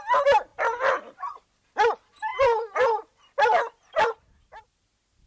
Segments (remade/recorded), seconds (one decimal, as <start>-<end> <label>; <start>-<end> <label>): 0.0-5.3 recorded